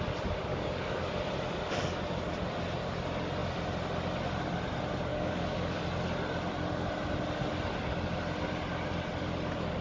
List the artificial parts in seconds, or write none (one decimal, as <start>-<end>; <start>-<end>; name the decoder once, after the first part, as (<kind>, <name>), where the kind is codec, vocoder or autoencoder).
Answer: 0.5-1.1 (codec, DAC); 5.1-5.8